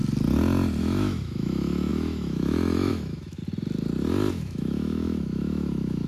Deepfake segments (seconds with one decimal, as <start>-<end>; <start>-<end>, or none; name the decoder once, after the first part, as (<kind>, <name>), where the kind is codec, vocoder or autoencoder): 0.8-3.4 (autoencoder, DAC-VAE); 4.3-6.1